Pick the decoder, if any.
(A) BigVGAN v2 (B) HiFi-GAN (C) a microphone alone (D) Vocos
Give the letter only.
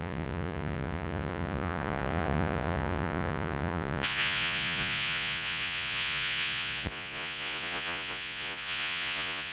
D